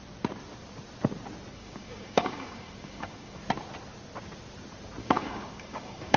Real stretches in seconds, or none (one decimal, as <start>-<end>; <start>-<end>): 0.0-1.5; 3.4-5.0